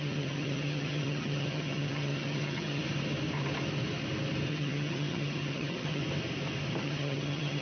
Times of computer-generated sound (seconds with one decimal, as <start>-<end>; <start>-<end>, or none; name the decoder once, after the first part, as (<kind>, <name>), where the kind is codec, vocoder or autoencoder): 0.0-2.8 (vocoder, HiFi-GAN); 4.5-6.0; 6.8-7.6